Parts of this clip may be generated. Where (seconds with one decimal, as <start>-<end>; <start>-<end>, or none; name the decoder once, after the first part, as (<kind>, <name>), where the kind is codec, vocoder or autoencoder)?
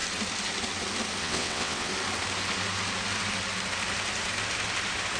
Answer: 1.2-1.9 (vocoder, WaveNeXt)